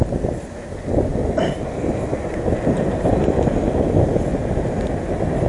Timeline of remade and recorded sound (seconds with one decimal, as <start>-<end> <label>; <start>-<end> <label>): 0.0-5.5 recorded